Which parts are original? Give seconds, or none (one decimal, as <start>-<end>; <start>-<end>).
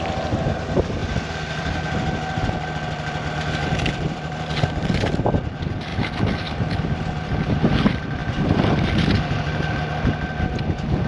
0.0-1.0; 5.5-5.9; 7.5-8.2; 8.9-11.1